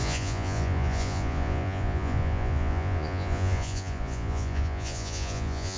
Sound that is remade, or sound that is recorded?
remade